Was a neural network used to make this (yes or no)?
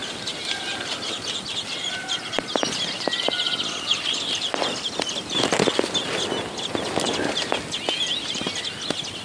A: no